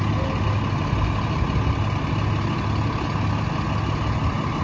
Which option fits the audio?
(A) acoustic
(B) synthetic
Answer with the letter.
A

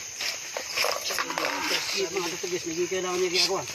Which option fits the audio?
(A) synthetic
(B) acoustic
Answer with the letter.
B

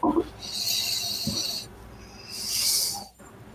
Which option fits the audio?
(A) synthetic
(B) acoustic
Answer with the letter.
B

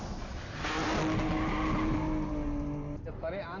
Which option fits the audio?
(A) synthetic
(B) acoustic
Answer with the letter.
B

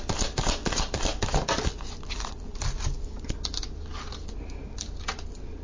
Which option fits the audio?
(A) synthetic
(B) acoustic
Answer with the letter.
B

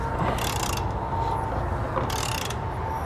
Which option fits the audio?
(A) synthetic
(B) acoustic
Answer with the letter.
B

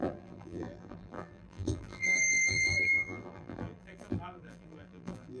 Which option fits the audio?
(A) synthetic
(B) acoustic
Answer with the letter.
A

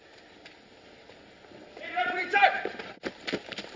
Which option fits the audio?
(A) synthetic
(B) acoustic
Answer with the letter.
A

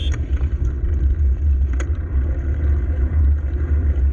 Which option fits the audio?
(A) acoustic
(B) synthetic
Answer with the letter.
B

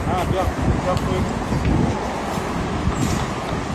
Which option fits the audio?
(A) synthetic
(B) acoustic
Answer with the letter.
B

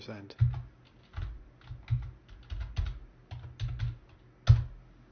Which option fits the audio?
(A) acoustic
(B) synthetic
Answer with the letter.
A